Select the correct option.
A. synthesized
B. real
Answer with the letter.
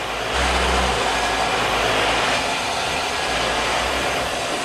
B